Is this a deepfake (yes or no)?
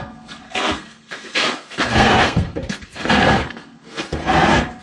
yes